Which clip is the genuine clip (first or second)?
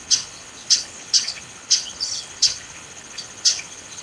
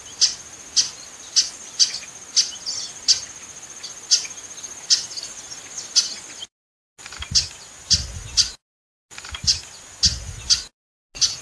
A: second